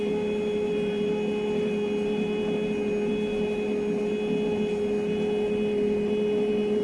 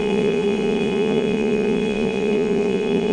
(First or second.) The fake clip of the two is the second